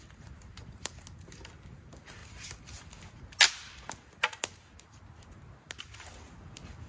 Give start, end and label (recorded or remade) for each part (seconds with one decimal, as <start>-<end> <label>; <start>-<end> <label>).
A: 0.0-6.9 recorded